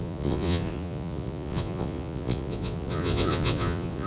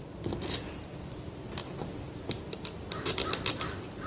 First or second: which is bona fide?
second